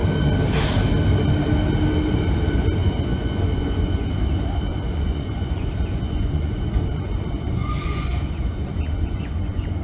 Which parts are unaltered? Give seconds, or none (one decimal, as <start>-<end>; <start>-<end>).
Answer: 0.0-2.8; 4.1-4.7